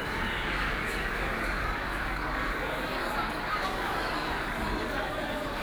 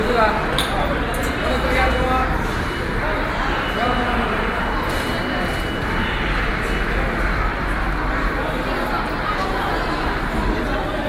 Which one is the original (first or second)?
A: second